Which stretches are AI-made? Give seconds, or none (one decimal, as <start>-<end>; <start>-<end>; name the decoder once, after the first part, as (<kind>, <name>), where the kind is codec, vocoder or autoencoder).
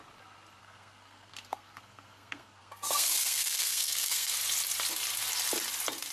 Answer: 0.6-4.3 (codec, SNAC)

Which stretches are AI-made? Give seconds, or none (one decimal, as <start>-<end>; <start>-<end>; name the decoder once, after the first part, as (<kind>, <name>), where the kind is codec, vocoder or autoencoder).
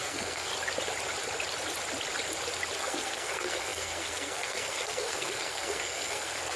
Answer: 0.0-0.5 (codec, SNAC); 2.8-6.6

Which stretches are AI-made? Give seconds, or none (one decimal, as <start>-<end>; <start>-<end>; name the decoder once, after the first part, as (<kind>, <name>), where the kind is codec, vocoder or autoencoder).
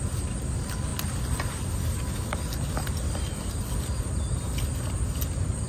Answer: none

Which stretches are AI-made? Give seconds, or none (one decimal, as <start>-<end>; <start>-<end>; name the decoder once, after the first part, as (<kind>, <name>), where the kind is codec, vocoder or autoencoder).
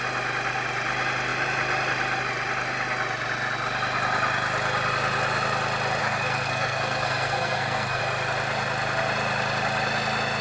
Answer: 6.0-8.0 (codec, SNAC)